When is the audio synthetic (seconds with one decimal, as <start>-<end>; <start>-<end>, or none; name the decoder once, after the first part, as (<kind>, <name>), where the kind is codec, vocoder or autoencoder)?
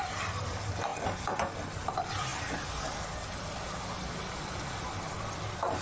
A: none